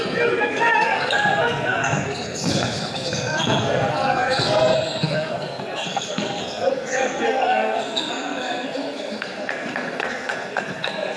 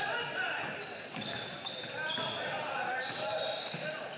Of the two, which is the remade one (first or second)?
first